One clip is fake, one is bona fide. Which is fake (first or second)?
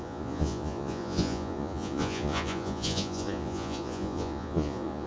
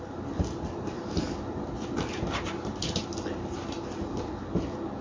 first